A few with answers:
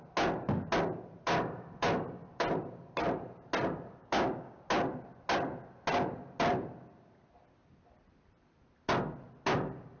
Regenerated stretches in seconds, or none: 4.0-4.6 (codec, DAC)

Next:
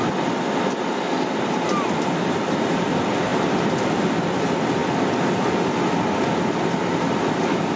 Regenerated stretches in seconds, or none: none

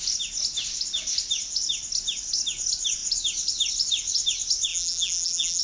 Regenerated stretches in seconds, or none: 4.7-5.6 (vocoder, BigVGAN v2)

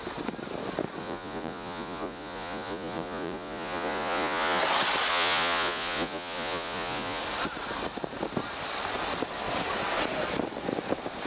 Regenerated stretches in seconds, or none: 1.0-4.6 (vocoder, Vocos); 5.1-7.2

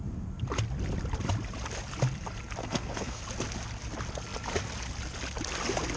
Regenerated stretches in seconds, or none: 2.6-3.2 (codec, SNAC)

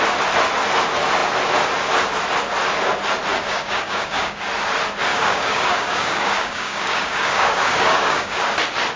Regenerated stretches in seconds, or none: 3.3-4.4 (codec, DAC); 5.1-8.4

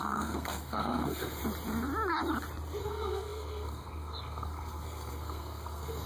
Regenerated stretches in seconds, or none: 0.0-1.4 (codec, SNAC); 2.8-6.1